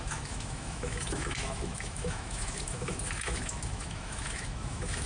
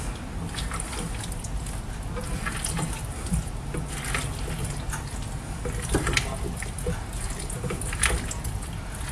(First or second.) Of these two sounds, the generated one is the first